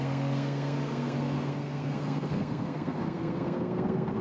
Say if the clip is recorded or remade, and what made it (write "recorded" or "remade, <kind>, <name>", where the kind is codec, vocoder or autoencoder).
remade, codec, SNAC